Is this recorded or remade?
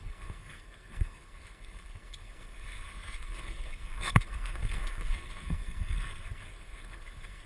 remade